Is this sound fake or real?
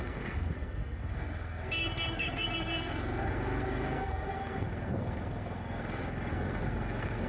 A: fake